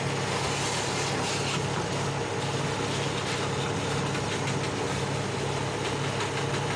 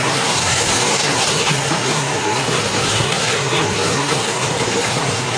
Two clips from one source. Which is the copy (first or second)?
second